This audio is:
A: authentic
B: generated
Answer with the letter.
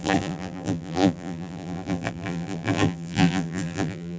B